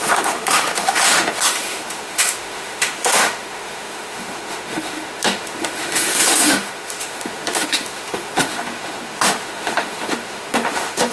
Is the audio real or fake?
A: fake